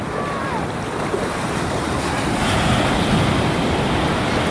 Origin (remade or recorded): recorded